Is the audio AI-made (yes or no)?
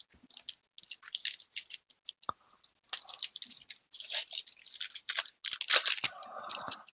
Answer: no